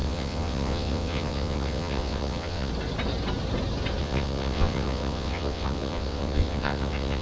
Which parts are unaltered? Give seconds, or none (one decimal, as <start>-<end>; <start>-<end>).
2.7-4.0